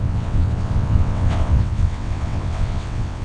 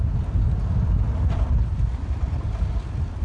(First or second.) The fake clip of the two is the first